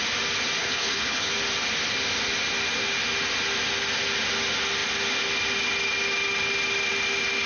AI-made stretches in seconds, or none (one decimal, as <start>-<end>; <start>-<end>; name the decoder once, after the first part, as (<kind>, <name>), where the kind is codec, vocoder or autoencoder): 0.6-1.3 (codec, HILCodec)